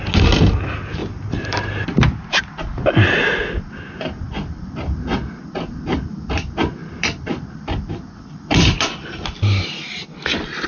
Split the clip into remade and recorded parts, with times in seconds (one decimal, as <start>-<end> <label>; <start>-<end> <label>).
0.0-1.0 recorded; 1.0-2.4 remade; 2.4-6.8 recorded; 6.8-8.9 remade; 8.9-10.7 recorded